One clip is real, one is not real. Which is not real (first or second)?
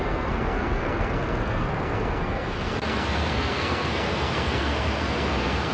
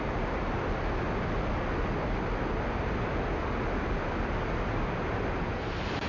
first